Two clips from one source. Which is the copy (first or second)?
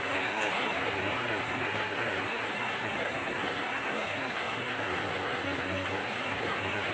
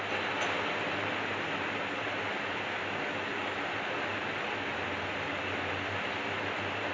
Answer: first